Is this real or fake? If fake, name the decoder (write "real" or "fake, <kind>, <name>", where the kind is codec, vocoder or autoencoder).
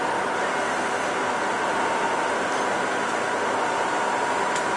real